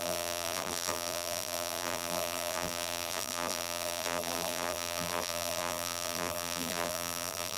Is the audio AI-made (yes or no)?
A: yes